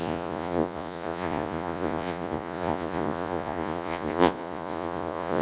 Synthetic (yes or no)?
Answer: yes